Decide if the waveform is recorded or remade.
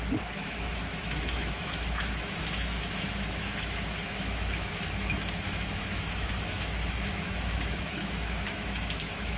remade